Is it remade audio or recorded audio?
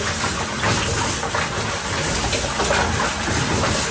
recorded